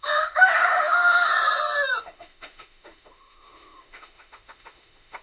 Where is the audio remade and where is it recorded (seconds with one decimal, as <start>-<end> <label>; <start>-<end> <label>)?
0.0-1.3 remade; 1.3-2.0 recorded; 2.0-5.2 remade